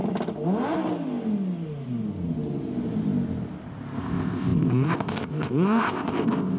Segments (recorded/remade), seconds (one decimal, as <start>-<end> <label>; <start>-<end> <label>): 0.0-4.0 recorded; 4.0-6.6 remade